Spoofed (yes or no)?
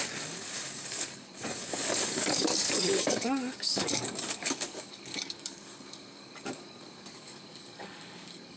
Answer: yes